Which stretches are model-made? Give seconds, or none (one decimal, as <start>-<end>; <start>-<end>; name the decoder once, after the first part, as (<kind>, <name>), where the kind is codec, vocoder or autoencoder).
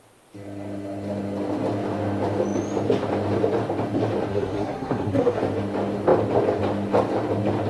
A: 4.3-5.4 (codec, SNAC)